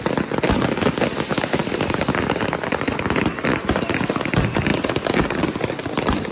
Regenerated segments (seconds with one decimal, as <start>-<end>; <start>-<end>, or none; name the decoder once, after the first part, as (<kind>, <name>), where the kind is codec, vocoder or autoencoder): none